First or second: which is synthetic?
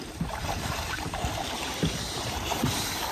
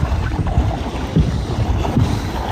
first